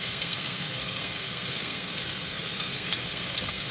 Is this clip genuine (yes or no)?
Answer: no